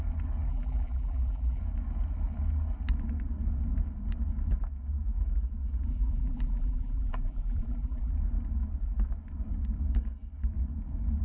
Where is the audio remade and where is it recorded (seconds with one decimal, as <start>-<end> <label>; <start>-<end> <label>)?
0.0-0.5 recorded; 0.5-1.6 remade; 1.6-5.9 recorded; 5.9-8.1 remade; 8.1-11.2 recorded